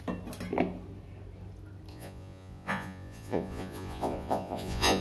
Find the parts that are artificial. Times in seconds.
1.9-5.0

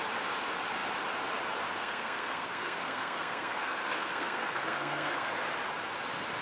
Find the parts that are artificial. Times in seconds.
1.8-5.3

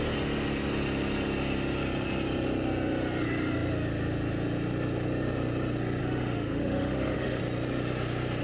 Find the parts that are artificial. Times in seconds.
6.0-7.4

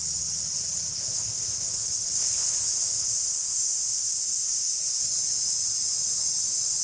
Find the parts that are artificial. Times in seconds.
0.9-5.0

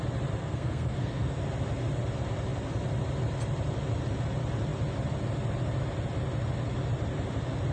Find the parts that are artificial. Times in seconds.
0.4-1.4